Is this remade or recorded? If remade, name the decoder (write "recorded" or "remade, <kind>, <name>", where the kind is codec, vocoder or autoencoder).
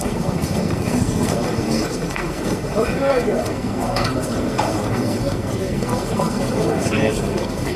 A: remade, codec, SNAC